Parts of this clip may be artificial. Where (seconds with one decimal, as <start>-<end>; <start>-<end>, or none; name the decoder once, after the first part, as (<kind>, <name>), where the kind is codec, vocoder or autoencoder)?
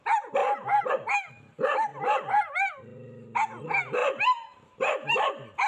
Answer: 0.4-0.9 (vocoder, BigVGAN v2)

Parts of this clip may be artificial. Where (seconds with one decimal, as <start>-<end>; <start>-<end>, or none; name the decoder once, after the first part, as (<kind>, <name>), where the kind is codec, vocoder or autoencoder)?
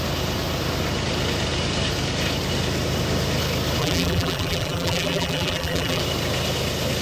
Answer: 3.8-6.0 (vocoder, BigVGAN v2)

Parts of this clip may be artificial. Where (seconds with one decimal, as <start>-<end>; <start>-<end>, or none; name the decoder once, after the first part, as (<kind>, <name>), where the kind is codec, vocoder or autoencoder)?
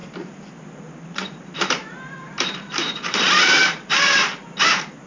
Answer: 0.0-0.6 (vocoder, BigVGAN v2); 1.1-4.2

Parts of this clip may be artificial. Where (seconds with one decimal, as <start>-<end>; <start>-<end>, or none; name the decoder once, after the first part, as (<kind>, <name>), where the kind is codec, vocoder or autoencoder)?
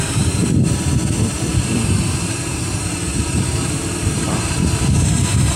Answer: 0.0-5.6 (vocoder, BigVGAN v2)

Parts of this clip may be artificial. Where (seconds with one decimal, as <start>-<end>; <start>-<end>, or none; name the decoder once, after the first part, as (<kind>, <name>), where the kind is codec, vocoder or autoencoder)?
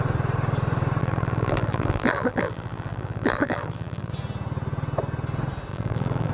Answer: 1.0-4.1 (vocoder, BigVGAN v2); 5.7-6.3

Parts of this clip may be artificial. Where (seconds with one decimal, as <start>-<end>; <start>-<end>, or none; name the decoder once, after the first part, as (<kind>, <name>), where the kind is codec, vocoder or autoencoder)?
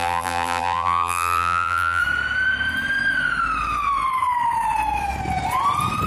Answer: 0.0-2.0 (vocoder, BigVGAN v2)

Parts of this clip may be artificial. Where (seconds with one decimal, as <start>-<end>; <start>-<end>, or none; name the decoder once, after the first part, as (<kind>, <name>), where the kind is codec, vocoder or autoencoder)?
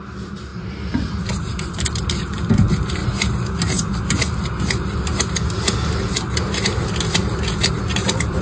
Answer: 0.0-3.0 (vocoder, BigVGAN v2); 7.7-8.4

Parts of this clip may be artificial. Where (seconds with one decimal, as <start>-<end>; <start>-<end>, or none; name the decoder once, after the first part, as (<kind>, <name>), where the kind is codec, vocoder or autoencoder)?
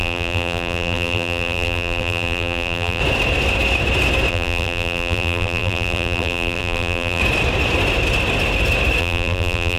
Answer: 0.0-3.0 (vocoder, BigVGAN v2); 4.3-7.2; 9.0-9.8